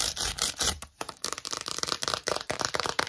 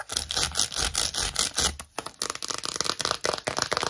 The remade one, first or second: first